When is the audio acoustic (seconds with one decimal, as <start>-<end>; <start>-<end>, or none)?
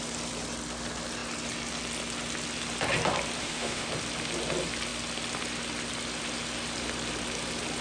0.0-3.4; 3.9-7.8